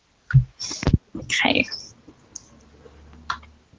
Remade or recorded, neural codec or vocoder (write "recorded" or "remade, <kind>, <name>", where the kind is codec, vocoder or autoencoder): recorded